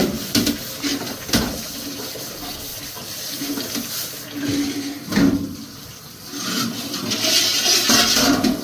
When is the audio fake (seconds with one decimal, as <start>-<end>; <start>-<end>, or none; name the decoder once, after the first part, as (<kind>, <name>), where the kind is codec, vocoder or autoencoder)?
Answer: 0.9-2.3 (vocoder, BigVGAN v2); 2.7-3.9; 5.1-7.8

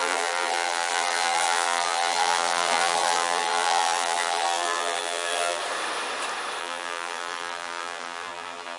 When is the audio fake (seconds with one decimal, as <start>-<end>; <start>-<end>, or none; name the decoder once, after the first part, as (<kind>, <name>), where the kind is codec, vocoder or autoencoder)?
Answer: 0.0-5.6 (vocoder, BigVGAN v2); 6.6-8.8

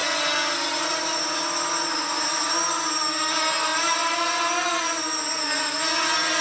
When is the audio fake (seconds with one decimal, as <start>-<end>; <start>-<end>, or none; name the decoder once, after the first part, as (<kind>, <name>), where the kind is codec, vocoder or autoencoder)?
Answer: 0.0-2.4 (vocoder, BigVGAN v2)